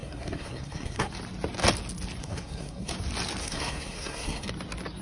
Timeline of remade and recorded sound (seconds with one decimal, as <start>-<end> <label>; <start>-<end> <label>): 0.0-1.1 remade; 1.1-2.2 recorded; 2.2-2.9 remade; 2.9-3.4 recorded; 3.4-4.5 remade; 4.5-5.0 recorded